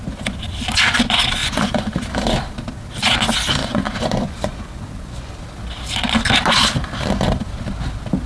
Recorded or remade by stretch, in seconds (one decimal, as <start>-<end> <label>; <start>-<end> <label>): 0.0-1.4 recorded; 1.4-2.0 remade; 2.0-3.6 recorded; 3.6-5.3 remade; 5.3-8.3 recorded